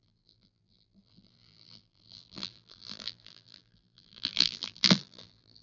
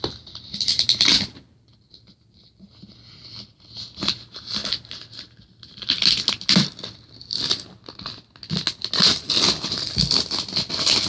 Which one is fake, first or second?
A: first